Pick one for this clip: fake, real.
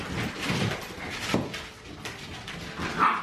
real